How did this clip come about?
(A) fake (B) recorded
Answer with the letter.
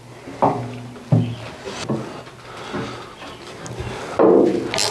B